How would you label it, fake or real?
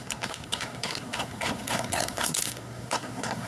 fake